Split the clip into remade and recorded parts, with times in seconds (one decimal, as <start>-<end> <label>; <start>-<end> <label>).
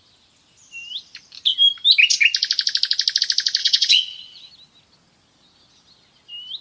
0.0-3.6 recorded; 3.6-4.5 remade; 4.5-6.6 recorded